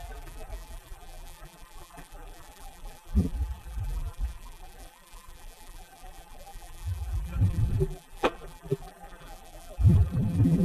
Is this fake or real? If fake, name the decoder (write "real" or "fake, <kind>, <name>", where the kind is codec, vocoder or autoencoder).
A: fake, vocoder, BigVGAN v2